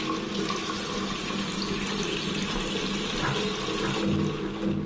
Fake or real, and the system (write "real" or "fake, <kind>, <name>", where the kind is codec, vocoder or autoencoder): real